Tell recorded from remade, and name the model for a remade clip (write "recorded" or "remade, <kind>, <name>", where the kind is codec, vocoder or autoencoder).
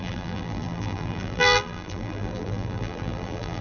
remade, vocoder, BigVGAN v2